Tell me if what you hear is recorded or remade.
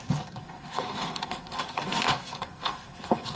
remade